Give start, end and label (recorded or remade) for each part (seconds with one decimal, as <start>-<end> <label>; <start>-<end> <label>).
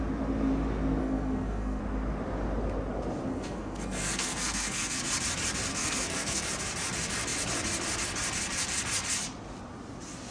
0.0-1.0 recorded; 1.0-1.8 remade; 1.8-3.3 recorded; 3.3-5.0 remade; 5.0-5.7 recorded; 5.7-6.4 remade; 6.4-10.3 recorded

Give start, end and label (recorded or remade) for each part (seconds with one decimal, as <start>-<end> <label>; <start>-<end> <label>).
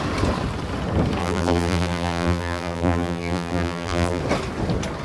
0.0-1.2 recorded; 1.2-4.2 remade; 4.2-5.0 recorded